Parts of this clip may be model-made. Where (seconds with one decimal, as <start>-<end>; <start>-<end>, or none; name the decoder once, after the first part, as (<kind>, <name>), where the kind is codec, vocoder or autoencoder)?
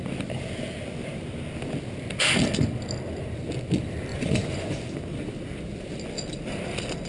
4.1-4.8 (vocoder, Vocos)